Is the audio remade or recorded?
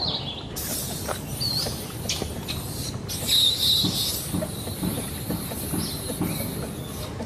recorded